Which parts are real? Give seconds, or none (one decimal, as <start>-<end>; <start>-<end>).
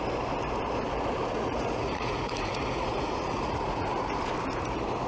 0.0-1.2; 4.3-5.1